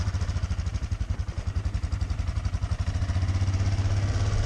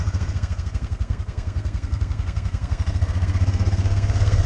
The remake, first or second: second